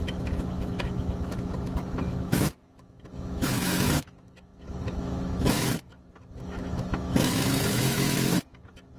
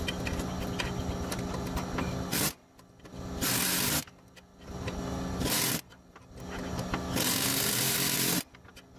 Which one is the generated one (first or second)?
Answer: first